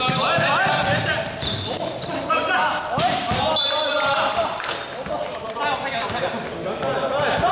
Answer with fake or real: real